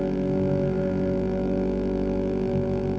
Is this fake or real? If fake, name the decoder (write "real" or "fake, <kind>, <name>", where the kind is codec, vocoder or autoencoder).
fake, autoencoder, DAC-VAE